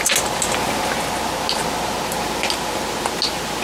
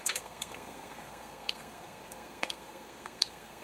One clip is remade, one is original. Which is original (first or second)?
first